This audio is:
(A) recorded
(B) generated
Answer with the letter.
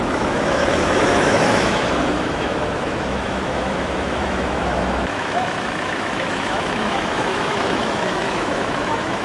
B